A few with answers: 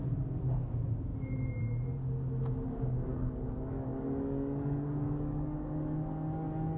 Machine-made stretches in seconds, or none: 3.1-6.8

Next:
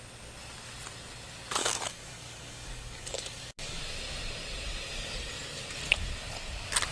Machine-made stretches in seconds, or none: 1.6-3.8

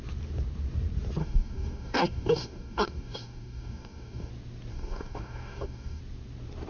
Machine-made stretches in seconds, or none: 1.2-4.3; 4.7-6.0

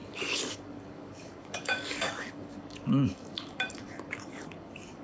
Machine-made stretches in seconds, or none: 0.0-5.0

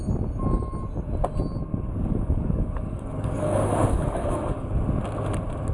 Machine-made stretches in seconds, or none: 1.7-4.7